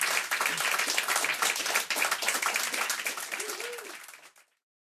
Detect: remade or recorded recorded